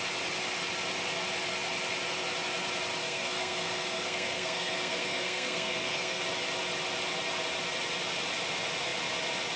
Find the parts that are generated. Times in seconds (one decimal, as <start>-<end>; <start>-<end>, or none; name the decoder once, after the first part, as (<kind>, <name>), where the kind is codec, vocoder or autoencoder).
3.0-6.2 (codec, SNAC)